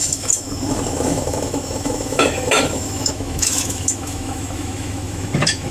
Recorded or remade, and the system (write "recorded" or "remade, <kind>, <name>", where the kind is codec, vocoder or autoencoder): remade, autoencoder, DAC-VAE